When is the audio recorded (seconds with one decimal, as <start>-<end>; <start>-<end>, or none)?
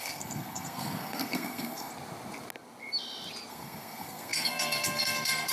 1.9-3.5